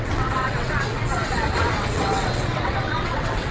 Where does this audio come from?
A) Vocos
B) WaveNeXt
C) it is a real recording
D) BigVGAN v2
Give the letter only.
B